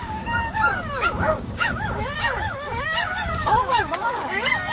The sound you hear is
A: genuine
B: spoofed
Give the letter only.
B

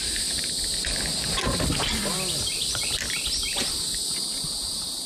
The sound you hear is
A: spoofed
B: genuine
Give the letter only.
B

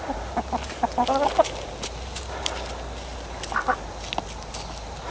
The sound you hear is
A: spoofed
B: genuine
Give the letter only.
B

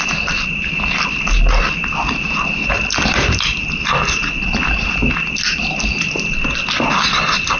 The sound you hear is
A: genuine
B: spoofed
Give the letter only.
A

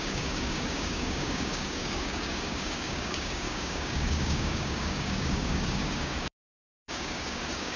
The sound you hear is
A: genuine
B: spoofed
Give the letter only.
B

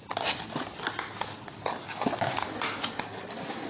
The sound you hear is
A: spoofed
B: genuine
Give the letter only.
B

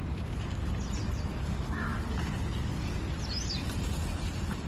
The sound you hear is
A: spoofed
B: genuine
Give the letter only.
B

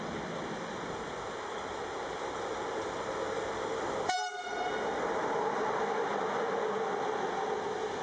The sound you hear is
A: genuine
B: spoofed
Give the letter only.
A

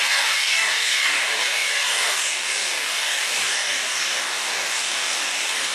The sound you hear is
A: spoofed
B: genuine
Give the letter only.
A